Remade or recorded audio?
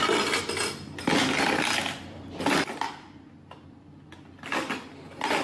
recorded